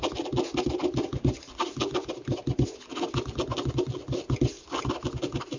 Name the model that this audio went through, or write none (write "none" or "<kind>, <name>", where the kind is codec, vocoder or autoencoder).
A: none